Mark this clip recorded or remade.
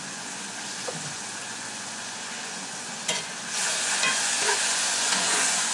remade